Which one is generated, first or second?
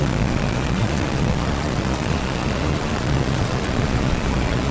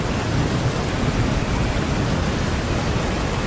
first